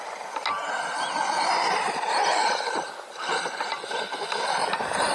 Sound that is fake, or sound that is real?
real